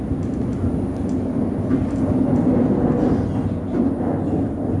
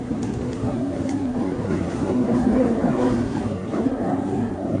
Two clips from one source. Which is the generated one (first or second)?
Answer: second